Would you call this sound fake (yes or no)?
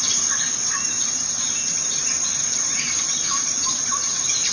yes